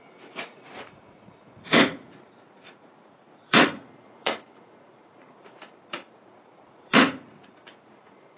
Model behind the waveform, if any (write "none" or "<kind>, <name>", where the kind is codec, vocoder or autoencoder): vocoder, Vocos